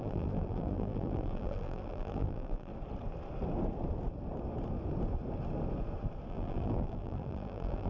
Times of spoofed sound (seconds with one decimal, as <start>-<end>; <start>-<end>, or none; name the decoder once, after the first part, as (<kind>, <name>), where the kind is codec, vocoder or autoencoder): 0.0-2.7 (vocoder, BigVGAN v2); 6.3-7.9